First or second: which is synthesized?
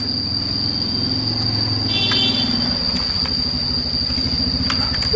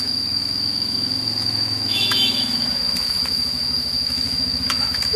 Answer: second